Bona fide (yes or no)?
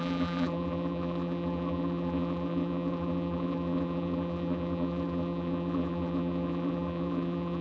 no